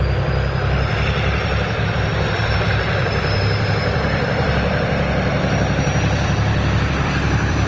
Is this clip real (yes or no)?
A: no